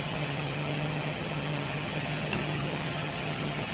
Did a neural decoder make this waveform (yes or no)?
yes